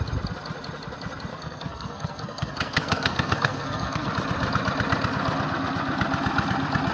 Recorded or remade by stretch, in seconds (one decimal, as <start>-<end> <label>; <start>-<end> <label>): 0.0-1.3 recorded; 1.3-4.1 remade; 4.1-6.9 recorded